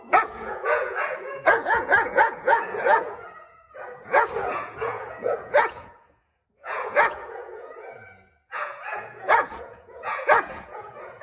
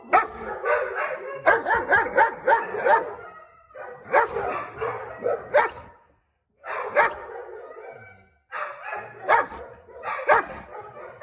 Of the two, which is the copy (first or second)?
first